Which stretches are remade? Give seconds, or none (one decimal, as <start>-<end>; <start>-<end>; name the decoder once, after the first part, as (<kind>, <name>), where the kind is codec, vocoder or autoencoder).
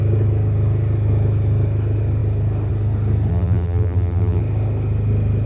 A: 3.3-4.4 (vocoder, BigVGAN v2)